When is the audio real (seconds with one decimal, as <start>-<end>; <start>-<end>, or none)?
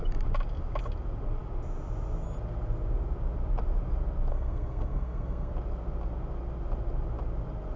0.0-4.3; 5.5-7.8